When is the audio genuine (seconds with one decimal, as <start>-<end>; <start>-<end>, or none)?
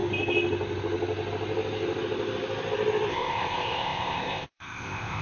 0.0-3.1